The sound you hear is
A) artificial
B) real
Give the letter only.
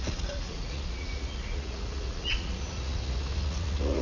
A